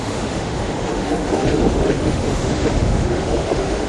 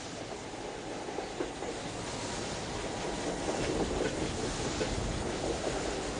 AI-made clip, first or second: first